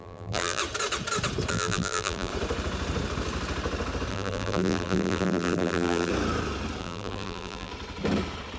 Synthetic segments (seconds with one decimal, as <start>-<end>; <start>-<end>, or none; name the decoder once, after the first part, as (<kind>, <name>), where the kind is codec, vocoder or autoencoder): 0.0-0.6 (vocoder, BigVGAN v2); 1.5-2.3; 4.1-6.1; 6.8-7.7

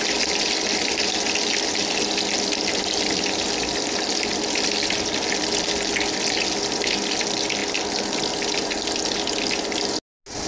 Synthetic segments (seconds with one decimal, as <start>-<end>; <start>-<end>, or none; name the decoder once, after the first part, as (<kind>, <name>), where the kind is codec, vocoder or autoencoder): none

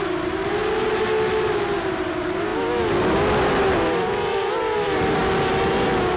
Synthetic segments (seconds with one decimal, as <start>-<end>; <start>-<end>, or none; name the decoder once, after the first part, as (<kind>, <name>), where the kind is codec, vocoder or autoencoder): 0.0-0.6 (vocoder, BigVGAN v2); 1.9-5.2; 5.7-6.2

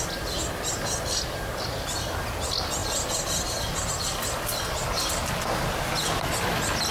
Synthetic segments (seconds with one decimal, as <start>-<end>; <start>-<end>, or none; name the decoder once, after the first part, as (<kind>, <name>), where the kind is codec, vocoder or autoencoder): none

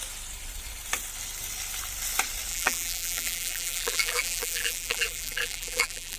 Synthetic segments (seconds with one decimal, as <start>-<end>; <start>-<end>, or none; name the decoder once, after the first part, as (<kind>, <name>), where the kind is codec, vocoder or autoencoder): 2.5-6.2 (vocoder, BigVGAN v2)

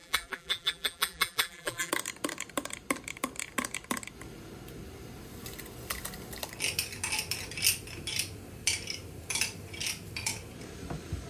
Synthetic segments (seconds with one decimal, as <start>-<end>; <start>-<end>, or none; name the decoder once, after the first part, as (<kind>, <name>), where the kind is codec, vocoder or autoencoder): 0.0-1.9 (vocoder, BigVGAN v2)

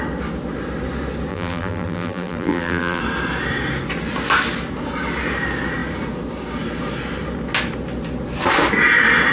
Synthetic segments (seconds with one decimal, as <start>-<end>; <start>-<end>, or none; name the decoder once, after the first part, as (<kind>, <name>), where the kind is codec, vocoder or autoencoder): 1.3-3.0 (vocoder, BigVGAN v2)

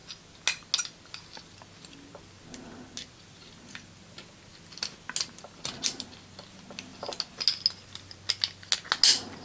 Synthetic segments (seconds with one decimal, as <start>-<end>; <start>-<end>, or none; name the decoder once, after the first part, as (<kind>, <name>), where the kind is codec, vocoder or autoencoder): none